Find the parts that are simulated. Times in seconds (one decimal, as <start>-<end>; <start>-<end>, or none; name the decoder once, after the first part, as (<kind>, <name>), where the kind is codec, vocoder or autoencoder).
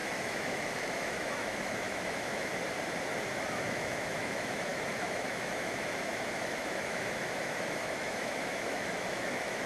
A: 0.0-2.5 (autoencoder, DAC-VAE); 3.5-9.7